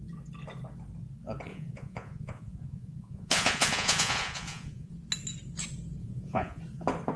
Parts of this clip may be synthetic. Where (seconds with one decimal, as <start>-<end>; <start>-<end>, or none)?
1.5-4.9; 6.0-6.6